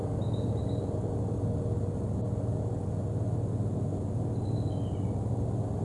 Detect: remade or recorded recorded